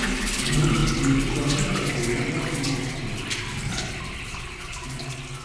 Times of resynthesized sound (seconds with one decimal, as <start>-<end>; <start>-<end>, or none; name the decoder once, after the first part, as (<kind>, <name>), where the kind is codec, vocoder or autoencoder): none

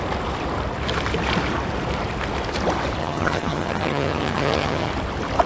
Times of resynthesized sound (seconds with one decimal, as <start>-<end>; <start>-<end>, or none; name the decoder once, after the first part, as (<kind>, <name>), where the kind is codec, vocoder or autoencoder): 3.0-4.9 (vocoder, HiFi-GAN)

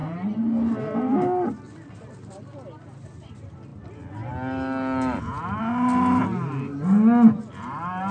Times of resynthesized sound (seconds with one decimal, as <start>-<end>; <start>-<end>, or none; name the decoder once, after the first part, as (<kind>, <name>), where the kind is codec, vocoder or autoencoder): none

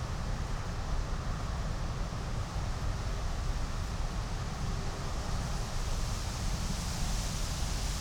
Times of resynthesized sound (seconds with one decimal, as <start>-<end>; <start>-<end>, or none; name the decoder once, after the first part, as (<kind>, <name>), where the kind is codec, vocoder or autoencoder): none